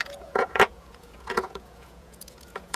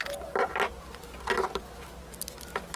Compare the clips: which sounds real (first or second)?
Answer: second